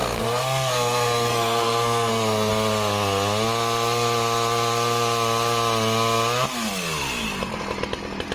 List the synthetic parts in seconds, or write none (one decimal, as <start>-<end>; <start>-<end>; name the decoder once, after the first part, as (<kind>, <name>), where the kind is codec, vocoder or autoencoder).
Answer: 0.0-2.5 (codec, SNAC)